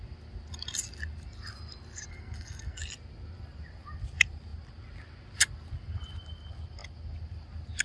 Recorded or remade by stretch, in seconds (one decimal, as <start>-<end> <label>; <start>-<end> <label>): 0.0-2.1 recorded; 2.1-2.8 remade; 2.8-7.8 recorded